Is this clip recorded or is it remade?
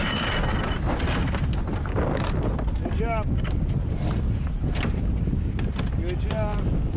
recorded